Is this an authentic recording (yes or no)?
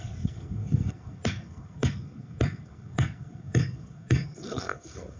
no